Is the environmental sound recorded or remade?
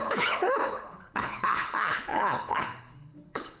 remade